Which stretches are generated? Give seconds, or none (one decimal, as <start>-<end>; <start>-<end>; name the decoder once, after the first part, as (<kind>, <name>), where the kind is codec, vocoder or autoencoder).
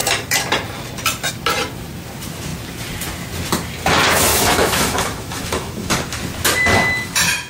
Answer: 4.3-5.9 (autoencoder, DAC-VAE)